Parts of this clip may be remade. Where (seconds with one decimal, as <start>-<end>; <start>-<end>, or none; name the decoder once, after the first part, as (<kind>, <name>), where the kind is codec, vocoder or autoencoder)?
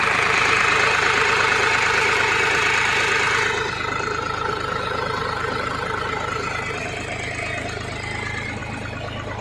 none